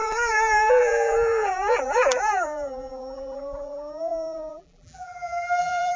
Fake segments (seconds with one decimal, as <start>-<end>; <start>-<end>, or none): 0.0-6.0